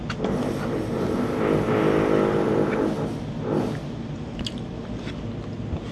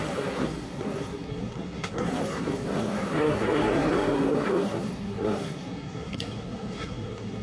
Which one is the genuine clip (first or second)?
first